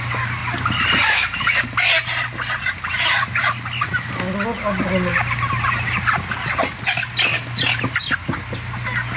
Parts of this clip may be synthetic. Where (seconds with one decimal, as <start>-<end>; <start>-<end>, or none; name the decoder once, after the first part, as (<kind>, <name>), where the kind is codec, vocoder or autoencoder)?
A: none